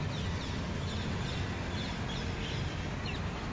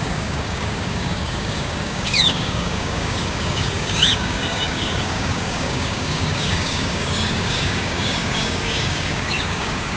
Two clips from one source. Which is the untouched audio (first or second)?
first